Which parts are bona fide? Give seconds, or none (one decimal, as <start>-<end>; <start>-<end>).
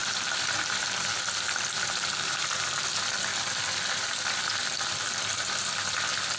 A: 2.5-3.3; 5.4-6.4